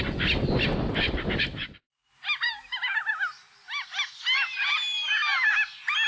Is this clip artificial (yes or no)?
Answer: no